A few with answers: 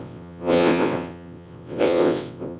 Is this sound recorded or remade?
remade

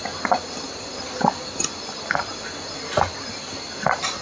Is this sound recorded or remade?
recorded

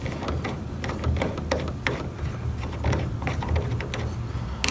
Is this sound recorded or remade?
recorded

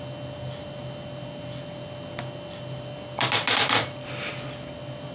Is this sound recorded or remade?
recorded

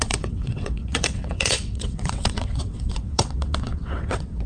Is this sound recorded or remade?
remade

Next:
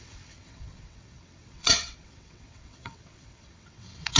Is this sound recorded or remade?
remade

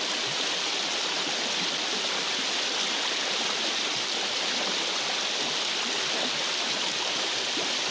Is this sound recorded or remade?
recorded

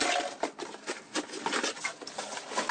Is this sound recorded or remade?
recorded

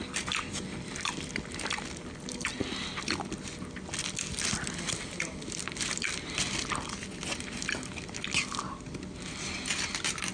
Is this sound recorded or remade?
recorded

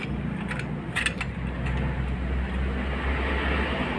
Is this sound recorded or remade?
recorded